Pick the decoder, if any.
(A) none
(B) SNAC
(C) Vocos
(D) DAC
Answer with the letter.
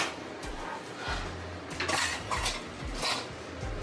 A